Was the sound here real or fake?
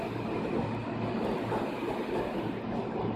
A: real